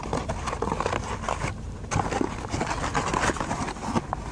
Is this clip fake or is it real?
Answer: real